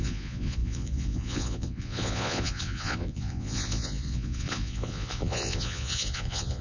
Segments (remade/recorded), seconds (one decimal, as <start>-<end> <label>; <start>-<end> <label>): 0.0-6.6 remade